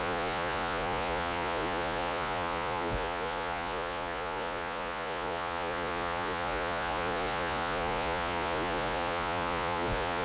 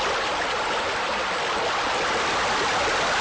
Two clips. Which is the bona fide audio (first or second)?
second